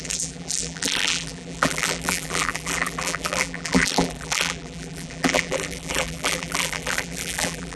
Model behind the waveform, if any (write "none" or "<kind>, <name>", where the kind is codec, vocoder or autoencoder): vocoder, BigVGAN v2